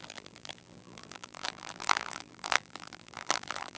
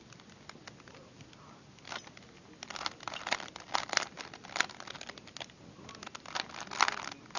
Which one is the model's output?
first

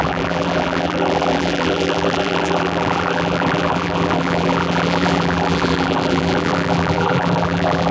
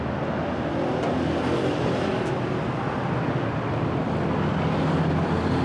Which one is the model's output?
first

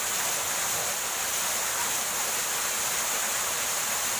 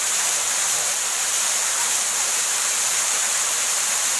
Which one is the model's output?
second